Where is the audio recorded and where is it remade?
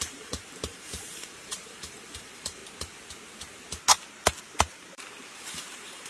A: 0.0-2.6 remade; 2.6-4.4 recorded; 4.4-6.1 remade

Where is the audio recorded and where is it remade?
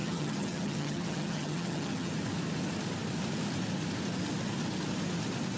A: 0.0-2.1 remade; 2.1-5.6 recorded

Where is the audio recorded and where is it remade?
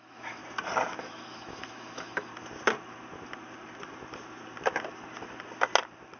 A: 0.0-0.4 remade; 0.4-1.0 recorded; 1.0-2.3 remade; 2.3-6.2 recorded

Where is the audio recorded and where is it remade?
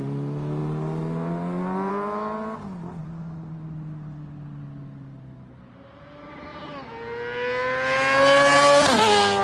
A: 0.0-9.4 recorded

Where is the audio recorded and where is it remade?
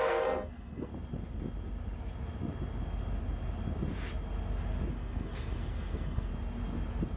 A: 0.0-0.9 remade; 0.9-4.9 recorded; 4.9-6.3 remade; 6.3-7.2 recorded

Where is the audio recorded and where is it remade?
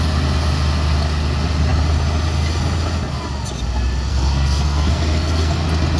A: 0.0-4.1 recorded; 4.1-5.6 remade; 5.6-6.0 recorded